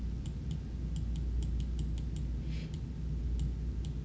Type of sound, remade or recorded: recorded